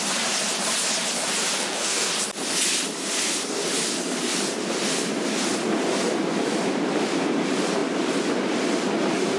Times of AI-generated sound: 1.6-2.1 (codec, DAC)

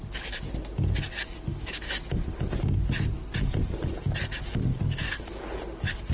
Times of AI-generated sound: 1.5-2.0 (codec, DAC); 4.7-5.4